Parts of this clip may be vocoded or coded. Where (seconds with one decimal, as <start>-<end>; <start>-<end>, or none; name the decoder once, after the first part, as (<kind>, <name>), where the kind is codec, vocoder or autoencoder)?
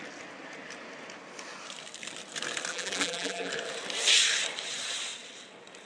2.7-3.5 (vocoder, BigVGAN v2)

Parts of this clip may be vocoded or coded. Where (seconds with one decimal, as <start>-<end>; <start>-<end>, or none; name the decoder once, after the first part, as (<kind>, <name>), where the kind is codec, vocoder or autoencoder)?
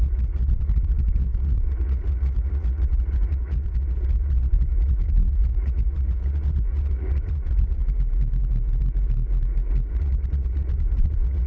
0.0-7.8 (vocoder, Vocos); 9.9-11.5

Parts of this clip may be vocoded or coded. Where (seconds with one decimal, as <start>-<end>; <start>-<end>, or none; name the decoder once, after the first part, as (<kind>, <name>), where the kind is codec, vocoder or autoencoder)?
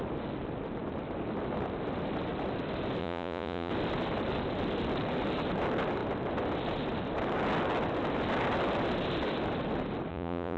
3.0-3.7 (vocoder, Vocos); 10.1-10.6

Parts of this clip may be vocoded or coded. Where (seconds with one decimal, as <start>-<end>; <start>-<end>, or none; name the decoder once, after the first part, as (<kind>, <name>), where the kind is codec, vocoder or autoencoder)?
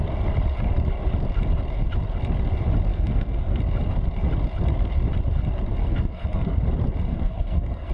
2.9-3.6 (codec, SNAC); 5.8-6.6; 7.1-7.9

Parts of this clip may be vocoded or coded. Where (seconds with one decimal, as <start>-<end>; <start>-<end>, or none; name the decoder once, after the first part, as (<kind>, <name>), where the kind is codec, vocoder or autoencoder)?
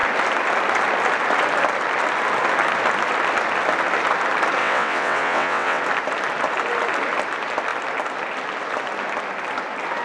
4.6-5.8 (vocoder, WaveNeXt)